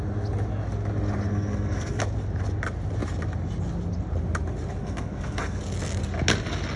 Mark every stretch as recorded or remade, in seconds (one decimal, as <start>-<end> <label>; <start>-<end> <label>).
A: 0.0-1.3 recorded; 1.3-2.0 remade; 2.0-4.8 recorded; 4.8-5.6 remade; 5.6-6.8 recorded